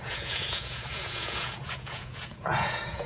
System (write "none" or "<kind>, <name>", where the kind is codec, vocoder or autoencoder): vocoder, Vocos